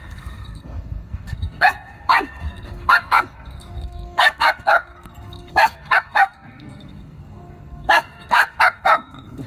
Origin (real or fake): fake